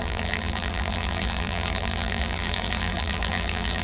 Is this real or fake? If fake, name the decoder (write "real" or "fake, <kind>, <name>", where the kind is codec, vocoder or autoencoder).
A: fake, vocoder, BigVGAN v2